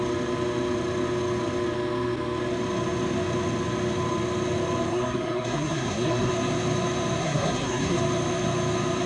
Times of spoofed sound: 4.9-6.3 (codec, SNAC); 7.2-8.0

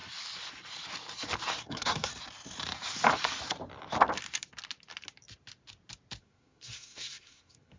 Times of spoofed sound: 1.6-2.1 (codec, SNAC); 6.2-7.8

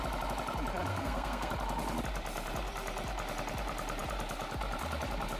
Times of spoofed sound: 0.9-1.5 (codec, SNAC)